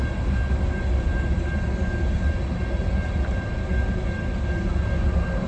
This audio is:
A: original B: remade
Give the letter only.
A